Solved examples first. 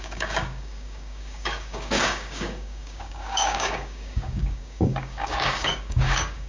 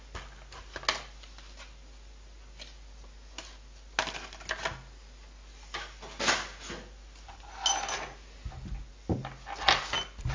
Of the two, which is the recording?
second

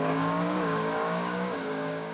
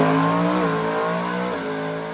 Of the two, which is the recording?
second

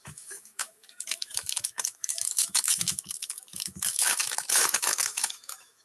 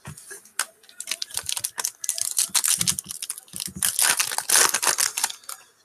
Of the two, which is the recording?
second